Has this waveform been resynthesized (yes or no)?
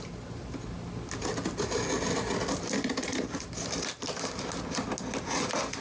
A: no